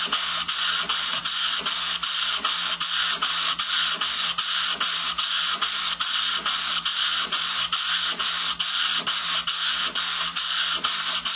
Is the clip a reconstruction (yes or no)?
no